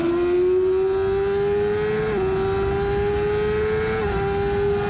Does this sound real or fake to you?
real